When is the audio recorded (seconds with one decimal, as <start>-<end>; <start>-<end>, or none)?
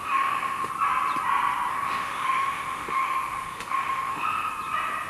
0.7-1.7; 4.5-5.1